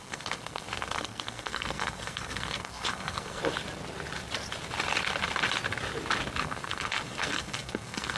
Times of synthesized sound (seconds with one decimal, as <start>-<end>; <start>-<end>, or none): 0.0-3.4; 6.4-8.2